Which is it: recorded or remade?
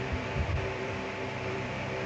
remade